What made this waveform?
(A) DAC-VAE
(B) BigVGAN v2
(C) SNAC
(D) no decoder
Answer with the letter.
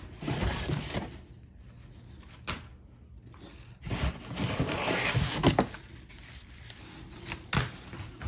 D